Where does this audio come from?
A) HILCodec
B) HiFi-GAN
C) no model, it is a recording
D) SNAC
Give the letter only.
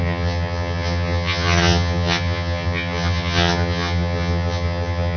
B